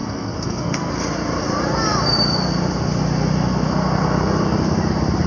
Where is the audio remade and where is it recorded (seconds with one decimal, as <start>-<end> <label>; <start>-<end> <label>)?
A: 0.0-0.9 remade; 0.9-5.3 recorded